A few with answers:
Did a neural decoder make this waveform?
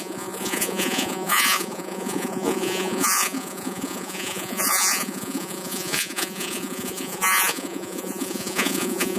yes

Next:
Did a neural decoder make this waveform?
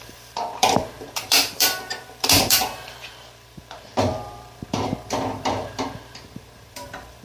yes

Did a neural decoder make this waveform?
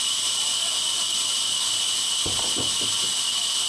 no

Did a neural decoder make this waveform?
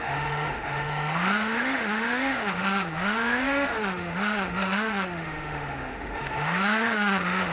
yes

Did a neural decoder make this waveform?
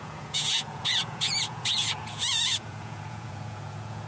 yes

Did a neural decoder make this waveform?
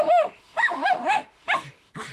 yes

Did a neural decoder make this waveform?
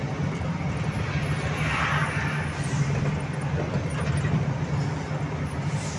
no